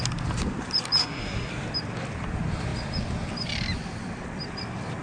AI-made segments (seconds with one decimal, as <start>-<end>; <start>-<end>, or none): 1.0-1.5